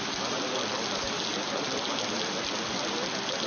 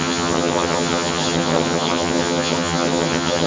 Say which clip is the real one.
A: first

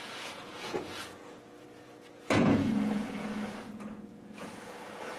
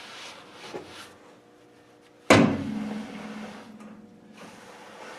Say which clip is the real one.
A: second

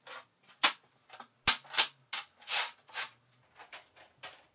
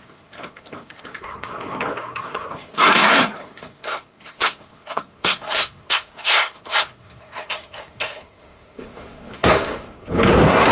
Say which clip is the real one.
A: first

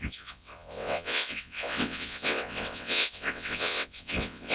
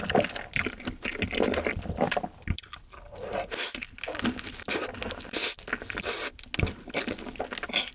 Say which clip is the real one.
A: second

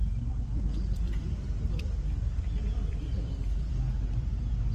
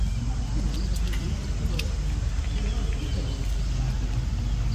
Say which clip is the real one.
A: second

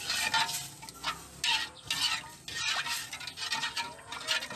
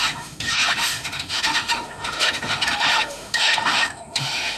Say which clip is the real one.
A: first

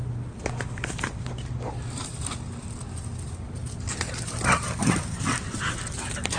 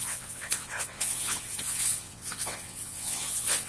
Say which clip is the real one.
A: first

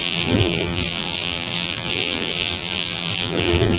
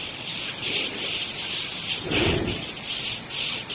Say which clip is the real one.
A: second